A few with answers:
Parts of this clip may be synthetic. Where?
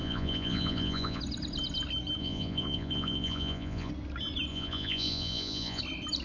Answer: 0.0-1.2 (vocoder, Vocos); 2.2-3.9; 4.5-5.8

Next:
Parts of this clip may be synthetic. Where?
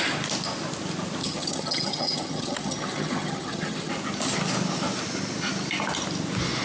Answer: 1.2-3.9 (vocoder, HiFi-GAN)